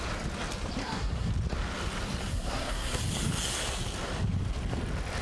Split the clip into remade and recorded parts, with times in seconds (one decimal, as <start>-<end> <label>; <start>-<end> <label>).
0.0-0.8 recorded; 0.8-1.3 remade; 1.3-2.3 recorded; 2.3-3.0 remade; 3.0-5.2 recorded